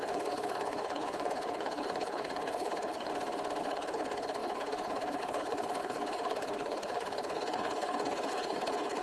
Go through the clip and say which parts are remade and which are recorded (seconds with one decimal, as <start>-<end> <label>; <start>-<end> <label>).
0.0-3.1 remade; 3.1-3.6 recorded; 3.6-9.0 remade